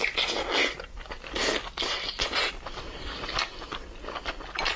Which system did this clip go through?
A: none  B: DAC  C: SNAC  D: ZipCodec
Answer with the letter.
A